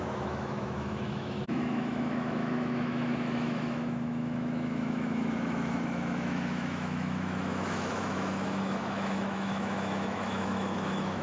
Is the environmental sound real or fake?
fake